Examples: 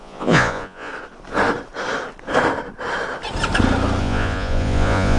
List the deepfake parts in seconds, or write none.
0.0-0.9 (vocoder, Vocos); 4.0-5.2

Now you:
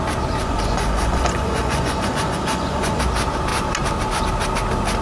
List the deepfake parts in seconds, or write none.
0.4-3.0 (vocoder, Vocos)

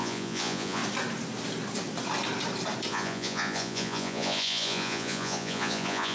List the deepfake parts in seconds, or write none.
0.0-0.8 (vocoder, Vocos); 2.9-6.1

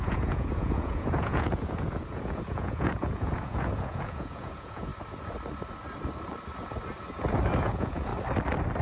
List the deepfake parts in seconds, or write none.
0.0-4.9 (vocoder, Vocos); 7.6-8.1

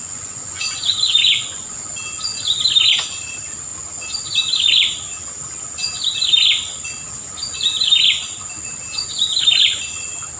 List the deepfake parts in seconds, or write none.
0.0-1.9 (vocoder, Vocos)

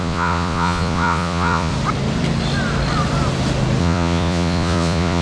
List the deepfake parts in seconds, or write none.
0.0-1.7 (vocoder, Vocos); 3.8-5.2

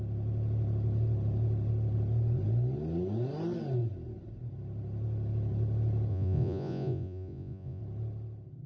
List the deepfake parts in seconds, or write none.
6.1-7.8 (vocoder, Vocos)

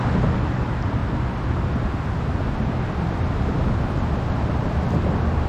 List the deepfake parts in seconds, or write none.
none